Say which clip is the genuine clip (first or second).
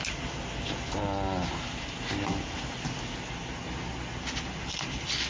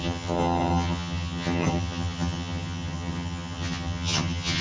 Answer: first